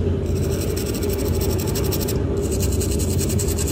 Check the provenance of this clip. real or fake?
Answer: real